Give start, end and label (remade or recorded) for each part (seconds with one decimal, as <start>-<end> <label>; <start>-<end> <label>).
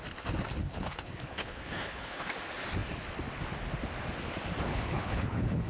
0.0-0.6 recorded; 0.6-2.3 remade; 2.3-4.7 recorded; 4.7-5.7 remade